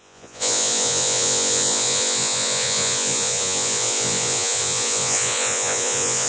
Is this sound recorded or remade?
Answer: remade